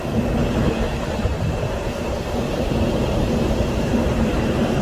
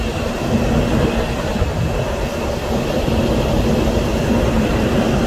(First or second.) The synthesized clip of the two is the first